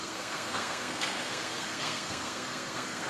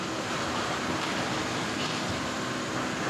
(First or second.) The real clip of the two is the second